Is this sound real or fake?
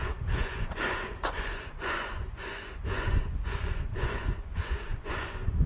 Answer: fake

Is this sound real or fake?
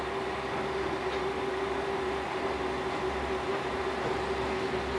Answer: real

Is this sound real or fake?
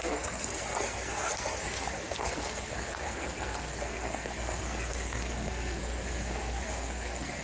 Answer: fake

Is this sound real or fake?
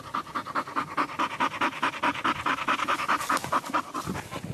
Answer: real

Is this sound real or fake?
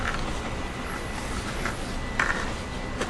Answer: real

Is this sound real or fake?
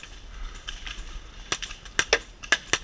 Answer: real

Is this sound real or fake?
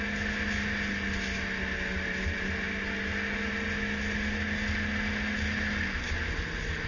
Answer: real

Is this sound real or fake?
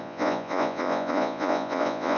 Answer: fake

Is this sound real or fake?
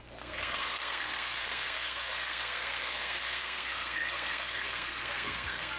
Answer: fake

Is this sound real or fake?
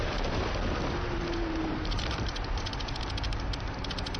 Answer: fake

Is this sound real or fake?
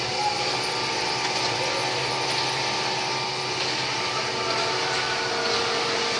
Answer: real